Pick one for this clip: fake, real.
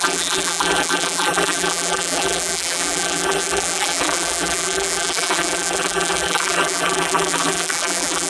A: fake